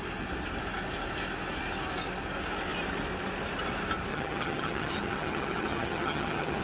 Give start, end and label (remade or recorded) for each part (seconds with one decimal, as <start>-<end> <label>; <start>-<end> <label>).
0.0-4.1 recorded; 4.1-6.6 remade

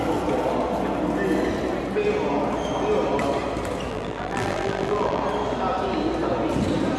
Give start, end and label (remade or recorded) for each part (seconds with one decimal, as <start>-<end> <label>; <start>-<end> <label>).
0.0-3.9 recorded; 3.9-5.2 remade; 5.2-7.0 recorded

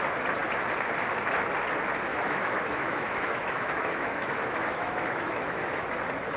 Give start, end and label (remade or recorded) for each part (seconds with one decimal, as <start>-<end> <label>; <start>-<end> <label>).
0.0-2.1 recorded; 2.1-5.9 remade; 5.9-6.4 recorded

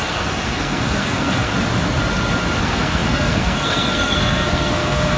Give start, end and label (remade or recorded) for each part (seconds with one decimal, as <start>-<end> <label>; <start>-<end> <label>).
0.0-1.5 remade; 1.5-2.6 recorded; 2.6-5.2 remade

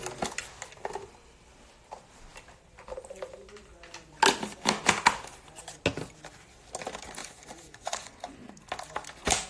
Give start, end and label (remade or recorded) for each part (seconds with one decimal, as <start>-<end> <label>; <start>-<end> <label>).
0.0-7.2 recorded; 7.2-8.5 remade; 8.5-9.5 recorded

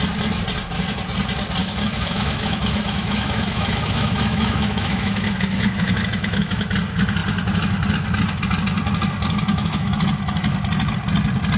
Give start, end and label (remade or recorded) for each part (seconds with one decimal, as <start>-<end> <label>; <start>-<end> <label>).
0.0-1.6 recorded; 1.6-6.6 remade; 6.6-9.5 recorded; 9.5-10.0 remade; 10.0-11.6 recorded